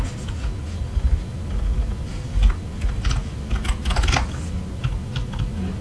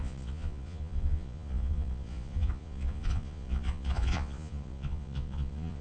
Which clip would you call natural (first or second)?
first